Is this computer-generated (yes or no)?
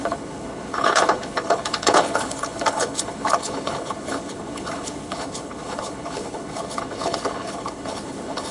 yes